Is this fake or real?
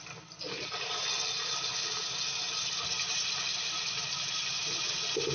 real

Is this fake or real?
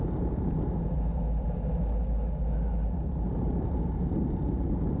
real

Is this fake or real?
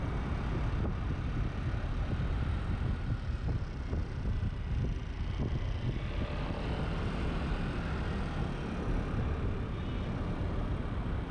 real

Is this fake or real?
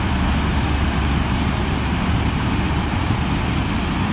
real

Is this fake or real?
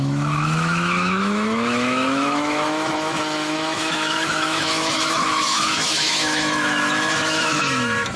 fake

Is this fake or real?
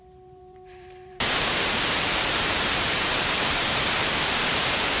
fake